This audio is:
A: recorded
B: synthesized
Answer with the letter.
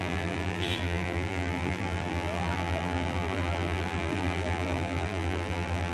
B